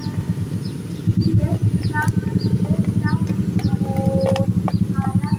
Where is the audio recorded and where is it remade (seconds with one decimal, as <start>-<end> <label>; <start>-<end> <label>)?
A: 0.0-5.4 recorded